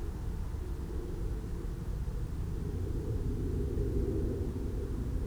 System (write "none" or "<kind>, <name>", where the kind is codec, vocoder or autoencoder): none